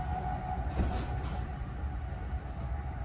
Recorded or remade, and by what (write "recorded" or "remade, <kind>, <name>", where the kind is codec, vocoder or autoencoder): recorded